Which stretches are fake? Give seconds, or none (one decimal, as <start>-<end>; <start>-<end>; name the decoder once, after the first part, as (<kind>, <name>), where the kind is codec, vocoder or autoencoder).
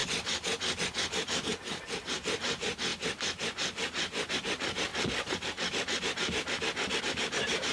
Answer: 0.8-2.9 (vocoder, BigVGAN v2); 4.3-4.9; 7.0-7.7